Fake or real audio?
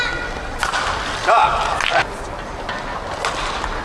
real